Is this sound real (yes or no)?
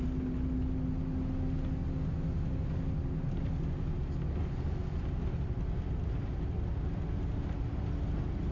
yes